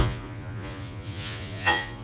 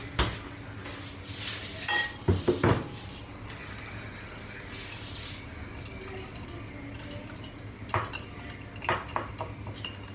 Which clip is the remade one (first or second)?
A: first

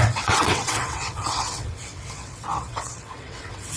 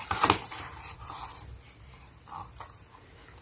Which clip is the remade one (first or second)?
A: first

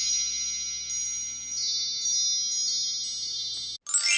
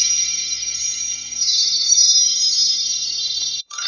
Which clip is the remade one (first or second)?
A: second